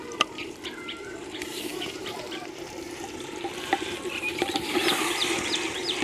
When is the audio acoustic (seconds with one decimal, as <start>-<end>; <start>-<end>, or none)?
none